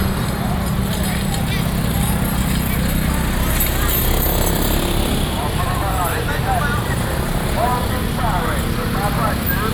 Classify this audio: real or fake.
real